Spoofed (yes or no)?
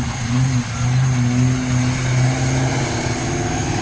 no